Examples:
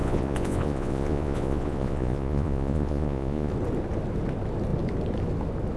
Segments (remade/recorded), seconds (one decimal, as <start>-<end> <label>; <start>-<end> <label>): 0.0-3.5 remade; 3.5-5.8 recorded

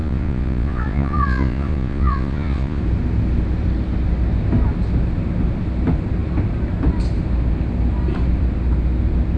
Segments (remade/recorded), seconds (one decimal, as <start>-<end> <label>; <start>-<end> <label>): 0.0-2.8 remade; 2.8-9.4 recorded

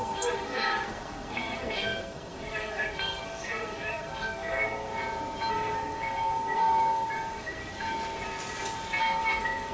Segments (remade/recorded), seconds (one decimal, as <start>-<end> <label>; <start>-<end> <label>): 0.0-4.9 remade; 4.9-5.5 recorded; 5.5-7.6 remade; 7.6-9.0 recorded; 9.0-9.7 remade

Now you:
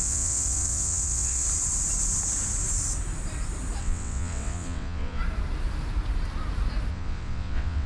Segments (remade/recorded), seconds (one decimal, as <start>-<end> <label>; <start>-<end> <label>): 0.0-1.4 remade; 1.4-3.8 recorded; 3.8-5.2 remade; 5.2-6.9 recorded; 6.9-7.9 remade

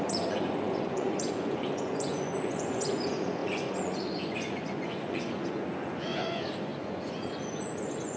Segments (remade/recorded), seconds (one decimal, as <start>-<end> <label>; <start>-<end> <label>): 0.0-8.2 remade